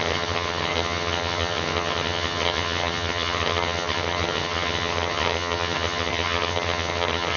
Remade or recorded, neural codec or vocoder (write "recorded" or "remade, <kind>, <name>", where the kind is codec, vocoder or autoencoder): remade, vocoder, HiFi-GAN